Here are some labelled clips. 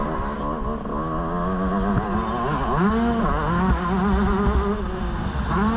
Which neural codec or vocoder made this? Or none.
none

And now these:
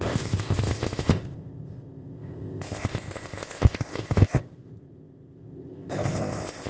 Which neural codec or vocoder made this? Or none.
codec, ZipCodec